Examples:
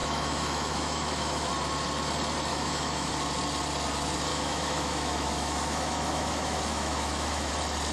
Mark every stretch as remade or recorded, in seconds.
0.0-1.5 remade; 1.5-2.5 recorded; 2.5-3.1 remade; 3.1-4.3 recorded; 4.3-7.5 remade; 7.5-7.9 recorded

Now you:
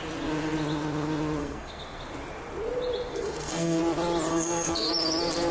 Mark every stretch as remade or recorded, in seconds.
0.0-1.4 recorded; 1.4-2.0 remade; 2.0-3.1 recorded; 3.1-3.8 remade; 3.8-4.3 recorded; 4.3-4.9 remade; 4.9-5.5 recorded

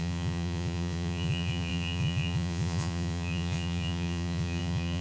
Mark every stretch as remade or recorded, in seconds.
0.0-5.0 remade

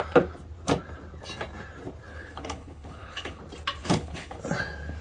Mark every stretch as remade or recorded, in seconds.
0.0-2.1 recorded; 2.1-3.4 remade; 3.4-3.8 recorded; 3.8-4.4 remade; 4.4-5.0 recorded

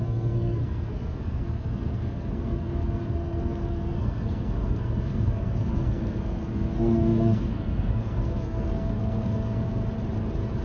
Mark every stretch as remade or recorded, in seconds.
0.0-9.8 remade; 9.8-10.6 recorded